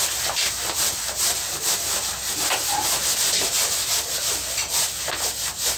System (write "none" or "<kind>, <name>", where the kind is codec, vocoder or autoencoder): vocoder, BigVGAN v2